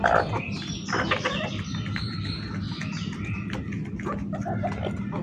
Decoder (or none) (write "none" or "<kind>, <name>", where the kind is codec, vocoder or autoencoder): none